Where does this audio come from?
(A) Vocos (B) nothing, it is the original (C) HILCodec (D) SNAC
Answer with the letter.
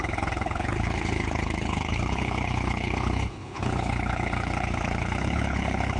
C